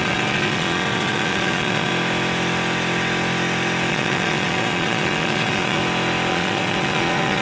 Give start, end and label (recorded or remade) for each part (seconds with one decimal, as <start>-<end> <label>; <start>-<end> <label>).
0.0-1.9 remade; 1.9-3.9 recorded; 3.9-5.8 remade; 5.8-6.3 recorded; 6.3-7.4 remade